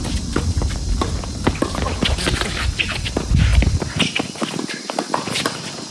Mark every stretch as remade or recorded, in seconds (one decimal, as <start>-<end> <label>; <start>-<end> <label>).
0.0-5.9 recorded